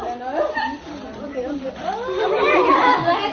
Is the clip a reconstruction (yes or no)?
no